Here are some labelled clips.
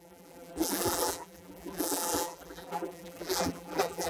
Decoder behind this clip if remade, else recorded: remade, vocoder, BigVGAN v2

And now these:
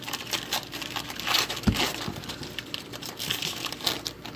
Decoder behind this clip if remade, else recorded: recorded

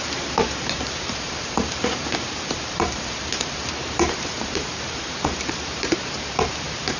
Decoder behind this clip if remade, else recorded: remade, vocoder, BigVGAN v2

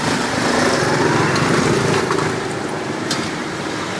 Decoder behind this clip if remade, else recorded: remade, vocoder, BigVGAN v2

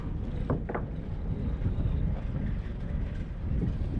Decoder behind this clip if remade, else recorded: recorded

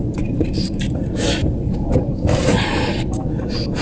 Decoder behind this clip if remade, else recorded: remade, vocoder, BigVGAN v2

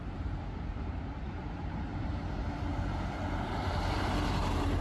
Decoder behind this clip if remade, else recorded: remade, vocoder, BigVGAN v2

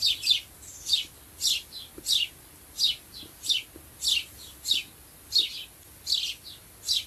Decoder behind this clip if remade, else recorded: recorded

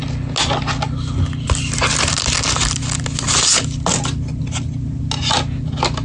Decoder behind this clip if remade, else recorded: recorded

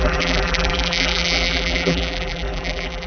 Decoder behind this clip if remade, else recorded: remade, vocoder, BigVGAN v2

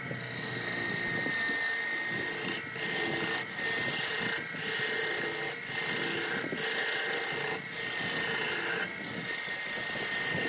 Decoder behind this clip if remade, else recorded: recorded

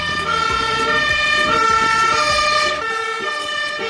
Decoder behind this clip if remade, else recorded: remade, vocoder, BigVGAN v2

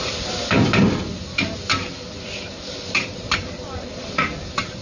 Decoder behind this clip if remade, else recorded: remade, vocoder, BigVGAN v2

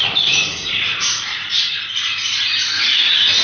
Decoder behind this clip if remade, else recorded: remade, vocoder, BigVGAN v2